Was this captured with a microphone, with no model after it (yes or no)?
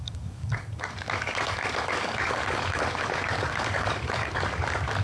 no